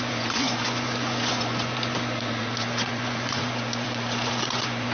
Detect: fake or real fake